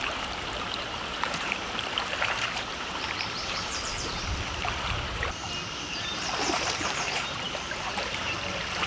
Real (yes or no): no